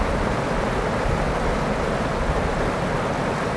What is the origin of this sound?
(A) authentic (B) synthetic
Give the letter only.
A